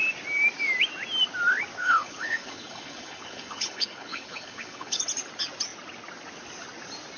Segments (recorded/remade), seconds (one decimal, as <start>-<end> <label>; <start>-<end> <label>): 0.0-1.8 recorded; 1.8-5.0 remade; 5.0-7.2 recorded